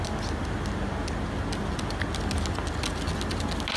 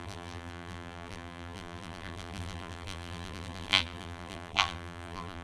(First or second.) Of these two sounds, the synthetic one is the second